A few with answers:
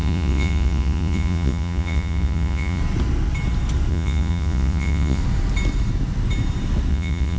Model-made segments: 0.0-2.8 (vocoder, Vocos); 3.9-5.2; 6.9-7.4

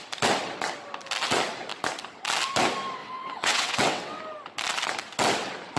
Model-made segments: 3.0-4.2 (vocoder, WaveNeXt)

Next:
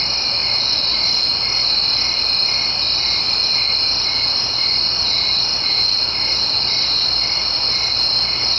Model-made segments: 0.4-1.0 (vocoder, BigVGAN v2)